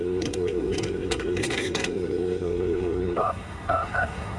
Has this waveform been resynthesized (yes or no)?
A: yes